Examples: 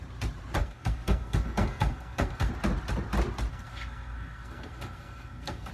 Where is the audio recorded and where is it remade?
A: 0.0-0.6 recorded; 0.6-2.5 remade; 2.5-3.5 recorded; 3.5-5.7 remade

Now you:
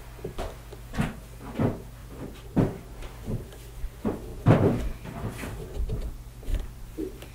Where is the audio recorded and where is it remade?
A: 0.0-2.0 recorded; 2.0-3.0 remade; 3.0-4.3 recorded; 4.3-4.8 remade; 4.8-6.5 recorded; 6.5-7.3 remade

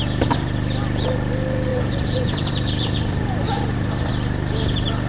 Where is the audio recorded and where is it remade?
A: 0.0-1.7 recorded; 1.7-4.1 remade; 4.1-5.1 recorded

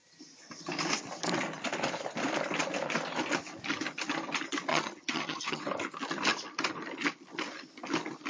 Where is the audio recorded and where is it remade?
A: 0.0-4.7 recorded; 4.7-5.6 remade; 5.6-8.3 recorded